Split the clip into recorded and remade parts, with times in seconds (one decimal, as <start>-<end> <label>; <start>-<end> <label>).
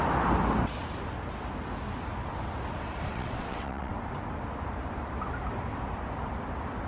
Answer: 0.0-3.1 recorded; 3.1-3.9 remade; 3.9-6.9 recorded